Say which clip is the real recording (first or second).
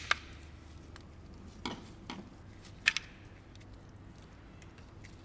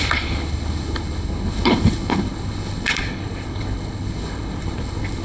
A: first